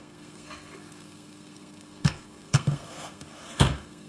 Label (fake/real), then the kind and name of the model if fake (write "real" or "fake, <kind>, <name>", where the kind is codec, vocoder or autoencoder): fake, codec, SNAC